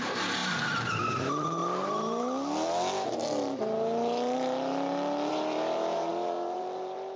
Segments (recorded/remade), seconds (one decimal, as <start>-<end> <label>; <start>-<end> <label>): 0.0-1.6 remade; 1.6-5.3 recorded; 5.3-7.2 remade